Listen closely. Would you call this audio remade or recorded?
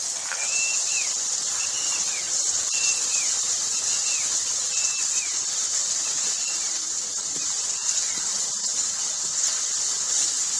remade